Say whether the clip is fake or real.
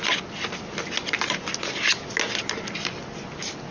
real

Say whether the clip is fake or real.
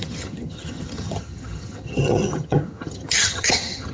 fake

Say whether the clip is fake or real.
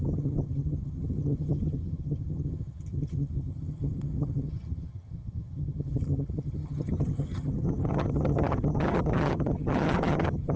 fake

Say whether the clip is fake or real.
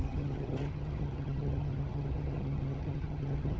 fake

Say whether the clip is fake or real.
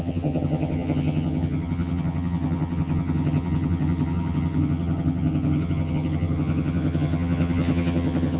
fake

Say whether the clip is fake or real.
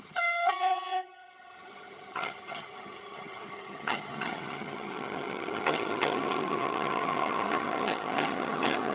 fake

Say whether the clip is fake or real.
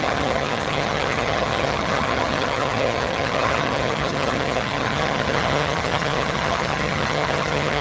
fake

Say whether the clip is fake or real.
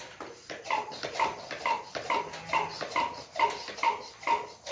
real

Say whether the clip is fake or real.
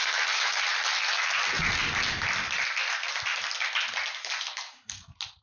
real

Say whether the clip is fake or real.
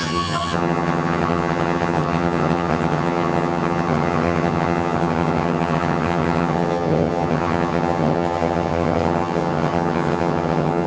fake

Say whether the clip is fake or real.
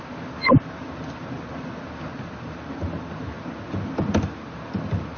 real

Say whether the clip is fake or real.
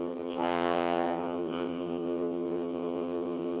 fake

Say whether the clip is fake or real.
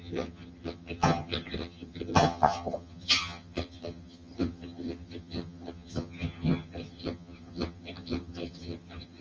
fake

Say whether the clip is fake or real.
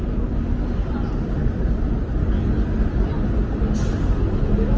real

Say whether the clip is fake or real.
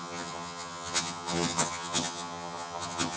fake